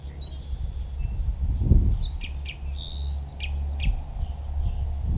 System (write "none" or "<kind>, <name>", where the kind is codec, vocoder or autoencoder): none